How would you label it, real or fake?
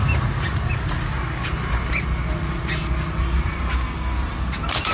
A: real